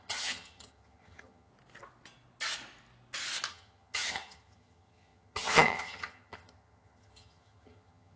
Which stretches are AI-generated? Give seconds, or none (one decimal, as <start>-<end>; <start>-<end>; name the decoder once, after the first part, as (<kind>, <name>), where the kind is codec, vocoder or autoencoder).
0.0-1.5 (vocoder, HiFi-GAN); 3.5-8.2